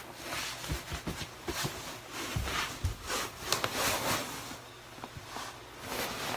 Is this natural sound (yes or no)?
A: yes